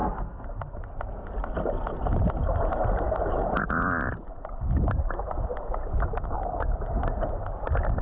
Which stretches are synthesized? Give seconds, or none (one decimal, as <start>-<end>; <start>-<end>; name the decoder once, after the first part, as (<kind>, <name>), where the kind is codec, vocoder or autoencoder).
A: none